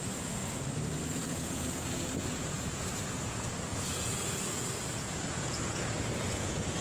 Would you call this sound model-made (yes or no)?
yes